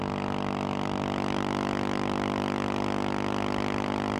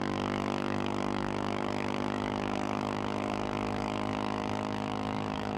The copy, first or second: second